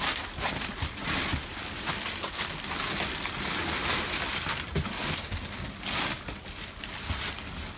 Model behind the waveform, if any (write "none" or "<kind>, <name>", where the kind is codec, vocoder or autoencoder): none